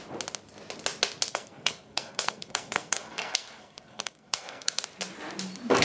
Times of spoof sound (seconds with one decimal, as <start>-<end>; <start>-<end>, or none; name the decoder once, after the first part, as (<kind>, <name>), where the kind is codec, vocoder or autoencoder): 1.3-4.8 (codec, SNAC)